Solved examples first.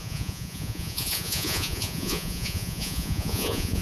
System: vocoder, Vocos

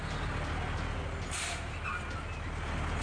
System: none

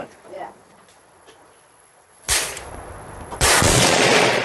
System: vocoder, Vocos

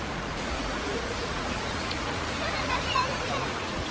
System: vocoder, Vocos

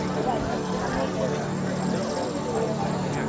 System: none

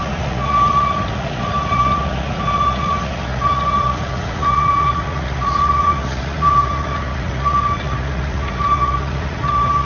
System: vocoder, Vocos